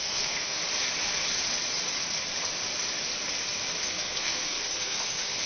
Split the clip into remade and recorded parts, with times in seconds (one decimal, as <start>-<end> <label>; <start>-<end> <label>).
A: 0.0-0.6 remade; 0.6-3.8 recorded; 3.8-5.5 remade